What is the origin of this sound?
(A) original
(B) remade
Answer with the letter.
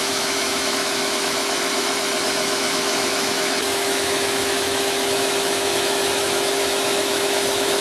B